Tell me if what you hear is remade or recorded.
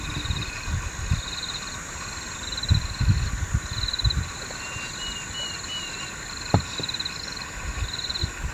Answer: recorded